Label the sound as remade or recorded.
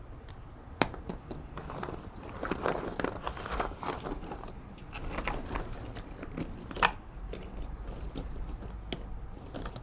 recorded